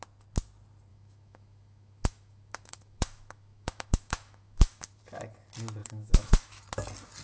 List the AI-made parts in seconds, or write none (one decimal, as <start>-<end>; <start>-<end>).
0.9-5.0; 5.8-6.6